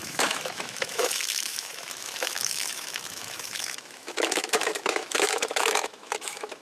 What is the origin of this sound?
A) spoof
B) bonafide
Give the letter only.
A